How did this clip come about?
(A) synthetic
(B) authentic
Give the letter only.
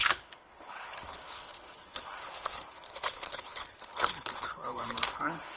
A